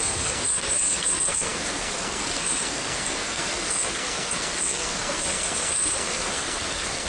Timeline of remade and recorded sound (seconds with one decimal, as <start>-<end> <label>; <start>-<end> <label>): 0.0-7.1 remade